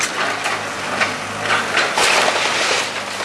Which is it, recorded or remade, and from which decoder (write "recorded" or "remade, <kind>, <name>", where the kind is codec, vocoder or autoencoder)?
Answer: recorded